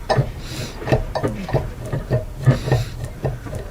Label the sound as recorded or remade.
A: remade